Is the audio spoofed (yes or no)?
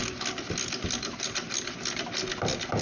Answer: no